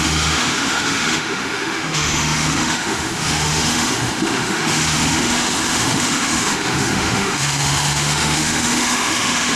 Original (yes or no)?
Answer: no